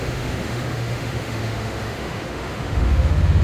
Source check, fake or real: fake